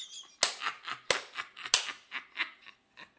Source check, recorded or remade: recorded